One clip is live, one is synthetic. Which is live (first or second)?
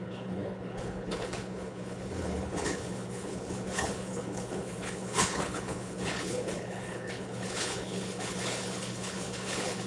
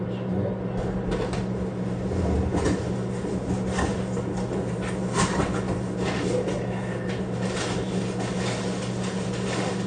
second